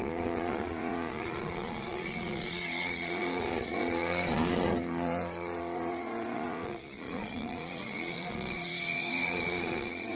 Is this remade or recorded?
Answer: remade